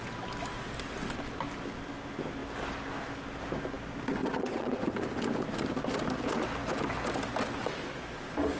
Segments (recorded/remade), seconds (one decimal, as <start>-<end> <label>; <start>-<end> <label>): 0.0-4.2 recorded; 4.2-4.8 remade; 4.8-8.6 recorded